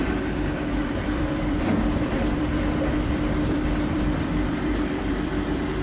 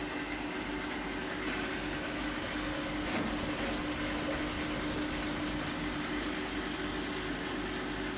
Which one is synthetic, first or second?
first